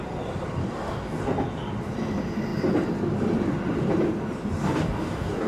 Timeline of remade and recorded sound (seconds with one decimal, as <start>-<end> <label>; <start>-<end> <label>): 0.0-0.6 recorded; 0.6-1.2 remade; 1.2-4.6 recorded; 4.6-5.5 remade

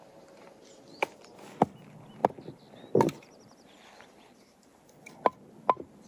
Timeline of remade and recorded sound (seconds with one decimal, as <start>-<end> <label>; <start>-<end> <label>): 0.0-6.1 recorded